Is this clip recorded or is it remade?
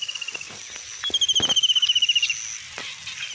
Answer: recorded